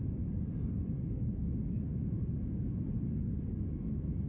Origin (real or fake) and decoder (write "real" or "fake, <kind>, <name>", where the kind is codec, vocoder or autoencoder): real